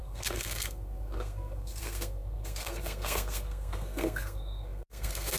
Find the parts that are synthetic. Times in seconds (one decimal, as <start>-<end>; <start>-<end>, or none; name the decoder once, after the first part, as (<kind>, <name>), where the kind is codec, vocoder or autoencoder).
0.0-5.4 (codec, SNAC)

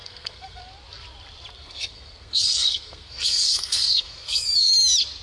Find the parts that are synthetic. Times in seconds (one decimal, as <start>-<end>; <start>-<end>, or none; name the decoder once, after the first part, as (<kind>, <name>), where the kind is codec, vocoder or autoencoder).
0.0-0.6 (codec, SNAC); 1.6-4.7

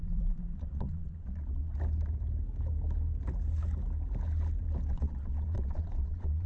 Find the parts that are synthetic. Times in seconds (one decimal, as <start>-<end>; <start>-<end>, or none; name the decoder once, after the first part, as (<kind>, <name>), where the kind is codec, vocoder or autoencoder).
0.0-1.7 (vocoder, Vocos); 4.9-6.5

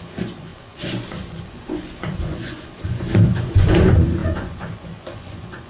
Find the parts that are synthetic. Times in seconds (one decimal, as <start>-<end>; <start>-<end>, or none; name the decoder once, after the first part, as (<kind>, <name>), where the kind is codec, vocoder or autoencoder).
0.0-5.7 (vocoder, Vocos)

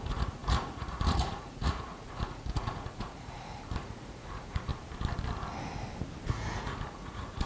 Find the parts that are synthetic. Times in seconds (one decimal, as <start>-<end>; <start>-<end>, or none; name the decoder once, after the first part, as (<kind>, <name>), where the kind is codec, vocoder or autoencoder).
0.0-4.7 (vocoder, Vocos); 6.3-7.5